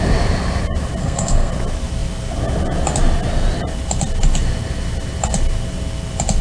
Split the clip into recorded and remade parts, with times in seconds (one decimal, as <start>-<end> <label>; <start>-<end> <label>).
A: 0.0-1.0 recorded; 1.0-1.5 remade; 1.5-6.4 recorded